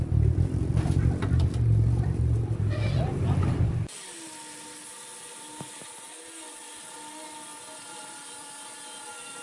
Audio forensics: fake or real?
real